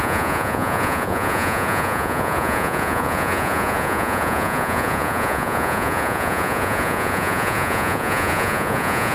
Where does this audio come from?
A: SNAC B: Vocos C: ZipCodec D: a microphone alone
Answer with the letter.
B